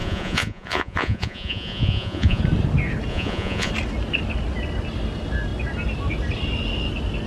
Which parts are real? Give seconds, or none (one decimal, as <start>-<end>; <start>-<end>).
2.4-3.1; 3.7-7.3